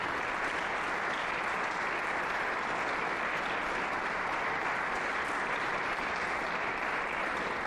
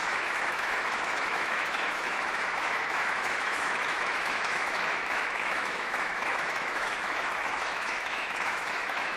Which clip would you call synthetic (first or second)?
second